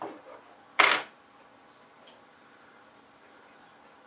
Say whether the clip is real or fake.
fake